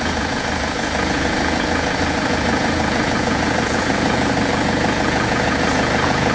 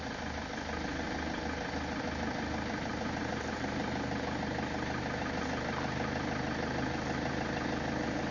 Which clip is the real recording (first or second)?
second